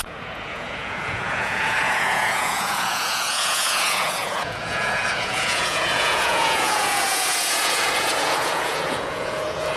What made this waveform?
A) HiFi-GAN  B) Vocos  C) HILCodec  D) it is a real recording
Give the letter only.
B